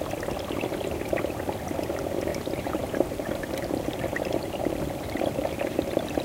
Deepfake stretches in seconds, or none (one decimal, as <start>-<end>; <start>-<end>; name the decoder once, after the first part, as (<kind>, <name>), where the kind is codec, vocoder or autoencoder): 2.3-6.2 (vocoder, BigVGAN v2)